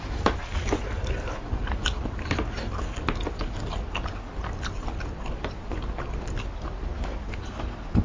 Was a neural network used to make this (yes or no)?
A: no